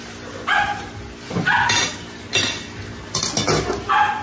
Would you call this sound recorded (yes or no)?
yes